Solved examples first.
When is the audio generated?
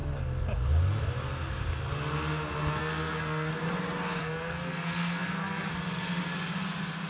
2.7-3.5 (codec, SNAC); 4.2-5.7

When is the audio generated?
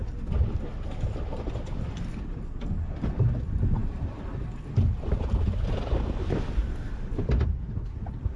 none